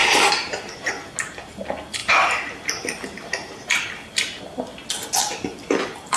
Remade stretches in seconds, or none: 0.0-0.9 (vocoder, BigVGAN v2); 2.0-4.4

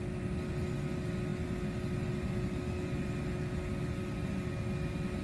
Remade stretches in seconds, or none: none

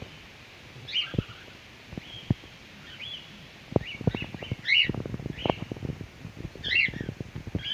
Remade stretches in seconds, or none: none

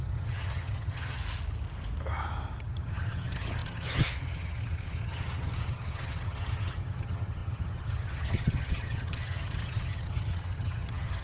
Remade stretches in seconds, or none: 0.0-1.2 (vocoder, HiFi-GAN); 2.6-11.2

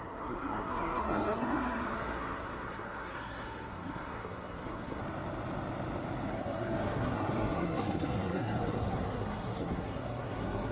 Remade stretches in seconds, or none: 0.0-5.0 (codec, SNAC); 6.3-10.7

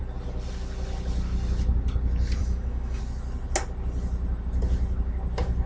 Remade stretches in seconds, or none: 2.4-3.0 (autoencoder, DAC-VAE)